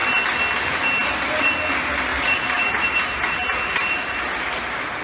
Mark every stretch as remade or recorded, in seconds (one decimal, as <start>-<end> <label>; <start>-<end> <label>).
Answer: 0.0-2.1 recorded; 2.1-4.1 remade; 4.1-5.0 recorded

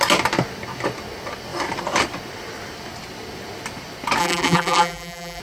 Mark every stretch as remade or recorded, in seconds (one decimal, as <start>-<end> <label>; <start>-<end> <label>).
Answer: 0.0-4.2 recorded; 4.2-5.4 remade

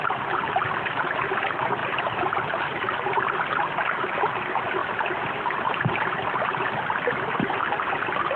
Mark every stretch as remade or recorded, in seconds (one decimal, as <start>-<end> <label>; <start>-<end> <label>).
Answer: 0.0-8.4 recorded

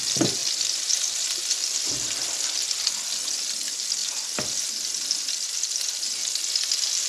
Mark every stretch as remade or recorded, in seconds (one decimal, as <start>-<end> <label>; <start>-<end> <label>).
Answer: 0.0-7.1 recorded

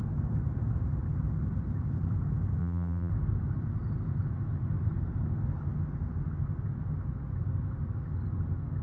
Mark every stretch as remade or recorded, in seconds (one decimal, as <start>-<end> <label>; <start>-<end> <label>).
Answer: 0.0-2.6 recorded; 2.6-3.1 remade; 3.1-8.8 recorded

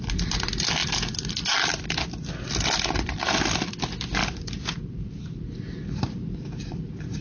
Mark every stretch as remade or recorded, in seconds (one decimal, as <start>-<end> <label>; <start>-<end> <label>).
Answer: 0.0-4.2 recorded; 4.2-7.2 remade

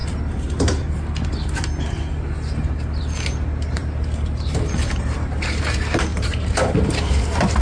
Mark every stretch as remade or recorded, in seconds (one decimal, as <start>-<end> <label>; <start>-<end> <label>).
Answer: 0.0-6.1 recorded; 6.1-6.9 remade; 6.9-7.6 recorded